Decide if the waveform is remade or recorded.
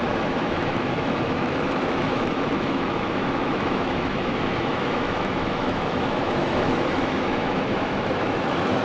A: remade